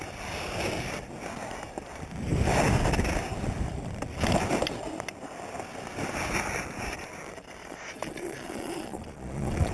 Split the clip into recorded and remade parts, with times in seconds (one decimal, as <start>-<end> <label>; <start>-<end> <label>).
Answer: 0.0-7.6 recorded; 7.6-9.7 remade